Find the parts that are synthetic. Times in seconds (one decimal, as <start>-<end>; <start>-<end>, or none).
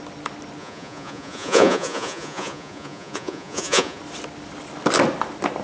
0.6-4.0